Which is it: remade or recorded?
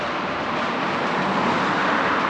remade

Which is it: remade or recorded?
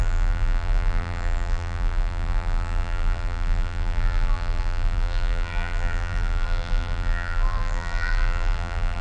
remade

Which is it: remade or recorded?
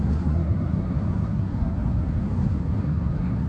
remade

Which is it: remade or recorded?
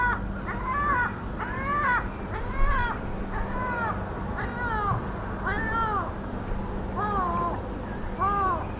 recorded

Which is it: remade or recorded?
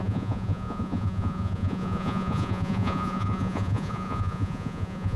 remade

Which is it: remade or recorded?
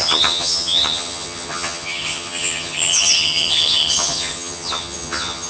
remade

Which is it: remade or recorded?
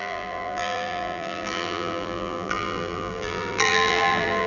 remade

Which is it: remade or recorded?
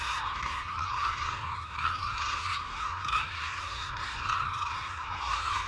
remade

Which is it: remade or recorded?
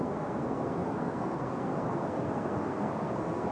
remade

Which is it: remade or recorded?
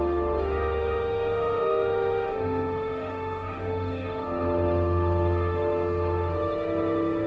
remade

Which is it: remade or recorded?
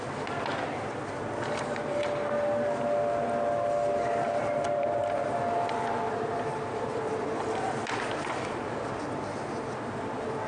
recorded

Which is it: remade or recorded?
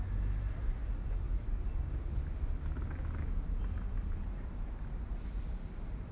recorded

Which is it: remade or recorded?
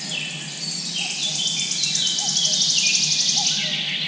recorded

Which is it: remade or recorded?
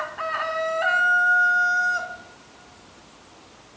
recorded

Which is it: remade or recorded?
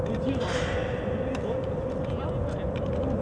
recorded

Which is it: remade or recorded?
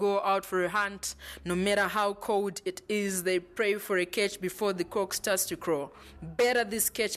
recorded